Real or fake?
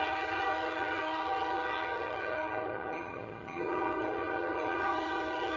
fake